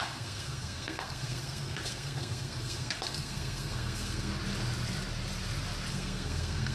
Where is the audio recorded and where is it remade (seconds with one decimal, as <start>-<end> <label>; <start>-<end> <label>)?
0.0-4.3 remade; 4.3-5.9 recorded; 5.9-6.7 remade